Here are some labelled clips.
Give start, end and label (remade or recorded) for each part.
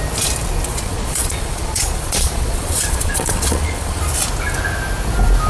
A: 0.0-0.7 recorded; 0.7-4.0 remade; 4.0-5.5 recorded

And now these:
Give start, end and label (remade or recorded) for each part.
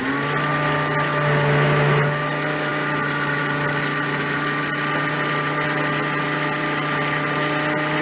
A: 0.0-8.0 recorded